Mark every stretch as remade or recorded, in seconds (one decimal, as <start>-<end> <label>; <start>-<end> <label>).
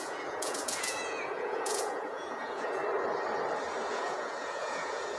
0.0-2.8 remade; 2.8-3.9 recorded; 3.9-5.2 remade